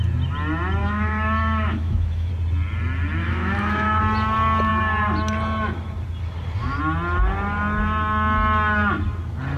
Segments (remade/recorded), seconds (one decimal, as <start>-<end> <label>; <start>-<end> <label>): 0.0-0.8 recorded; 0.8-2.3 remade; 2.3-3.2 recorded; 3.2-4.0 remade; 4.0-9.6 recorded